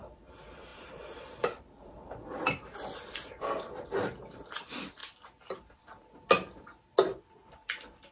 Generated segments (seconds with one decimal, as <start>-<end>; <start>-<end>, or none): 0.0-5.0; 7.2-8.1